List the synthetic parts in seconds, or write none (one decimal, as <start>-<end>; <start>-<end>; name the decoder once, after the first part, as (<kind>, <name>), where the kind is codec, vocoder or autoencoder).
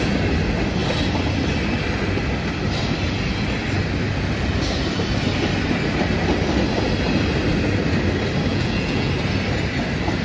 8.5-9.1 (vocoder, Vocos)